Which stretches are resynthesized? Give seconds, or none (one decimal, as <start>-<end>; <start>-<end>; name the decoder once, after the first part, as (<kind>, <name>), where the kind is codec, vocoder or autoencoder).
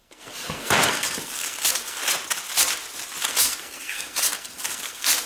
0.0-2.0 (codec, SNAC); 3.2-5.3